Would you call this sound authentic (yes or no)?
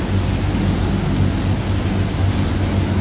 yes